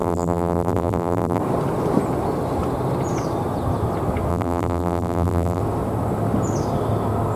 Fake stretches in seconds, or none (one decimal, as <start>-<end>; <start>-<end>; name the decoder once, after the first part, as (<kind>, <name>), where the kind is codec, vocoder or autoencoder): 0.0-1.4 (vocoder, BigVGAN v2); 4.3-5.6